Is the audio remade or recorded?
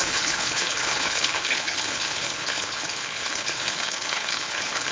remade